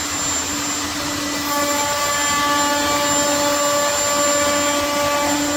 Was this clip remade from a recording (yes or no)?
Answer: no